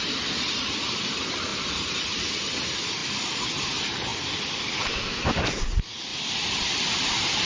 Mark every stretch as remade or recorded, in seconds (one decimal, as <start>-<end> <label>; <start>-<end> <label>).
0.0-1.5 recorded; 1.5-2.5 remade; 2.5-4.1 recorded; 4.1-4.7 remade; 4.7-6.1 recorded; 6.1-7.5 remade